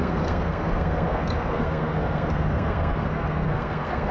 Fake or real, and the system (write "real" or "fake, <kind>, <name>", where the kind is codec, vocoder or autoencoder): fake, codec, SNAC